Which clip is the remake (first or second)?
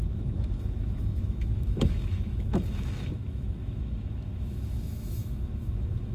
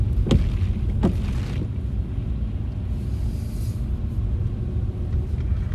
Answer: first